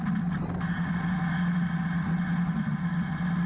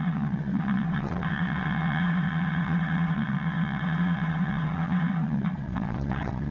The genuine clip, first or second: first